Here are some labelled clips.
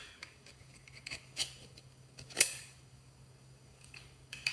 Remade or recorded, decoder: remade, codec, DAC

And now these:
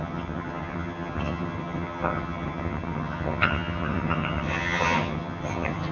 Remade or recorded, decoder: remade, vocoder, HiFi-GAN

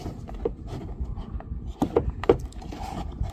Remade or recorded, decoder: recorded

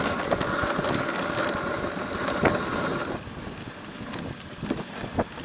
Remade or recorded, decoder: recorded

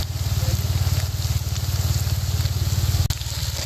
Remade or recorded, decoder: recorded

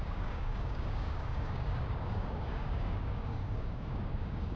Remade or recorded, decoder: remade, codec, DAC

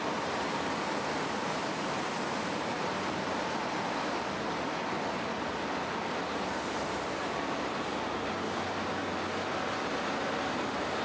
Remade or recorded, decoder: recorded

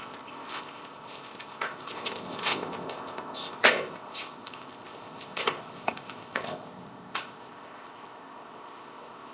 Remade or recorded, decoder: remade, codec, ZipCodec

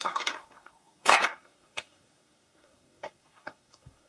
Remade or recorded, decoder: remade, codec, SNAC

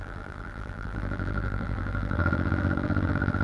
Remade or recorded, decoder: remade, vocoder, BigVGAN v2